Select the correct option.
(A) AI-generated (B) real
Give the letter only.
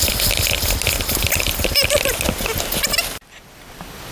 B